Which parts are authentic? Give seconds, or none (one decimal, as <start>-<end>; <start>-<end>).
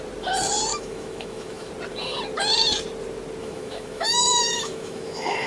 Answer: 0.0-0.7; 1.7-3.4